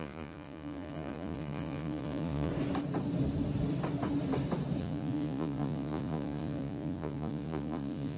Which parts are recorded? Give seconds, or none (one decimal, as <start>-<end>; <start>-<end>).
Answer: 2.5-4.8